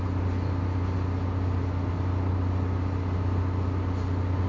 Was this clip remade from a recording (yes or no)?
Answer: no